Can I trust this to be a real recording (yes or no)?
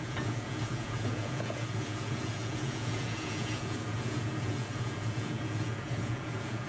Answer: no